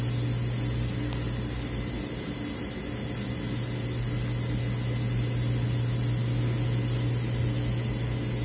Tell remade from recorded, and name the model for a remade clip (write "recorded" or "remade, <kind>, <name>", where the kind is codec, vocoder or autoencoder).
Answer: recorded